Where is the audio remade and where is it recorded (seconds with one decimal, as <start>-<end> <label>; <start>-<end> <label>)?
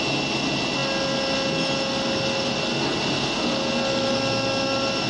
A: 0.0-5.1 recorded